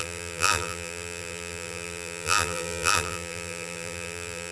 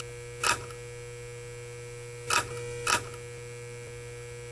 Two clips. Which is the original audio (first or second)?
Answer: second